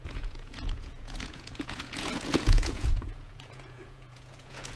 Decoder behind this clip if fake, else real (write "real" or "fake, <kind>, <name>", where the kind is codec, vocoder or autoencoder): fake, vocoder, Vocos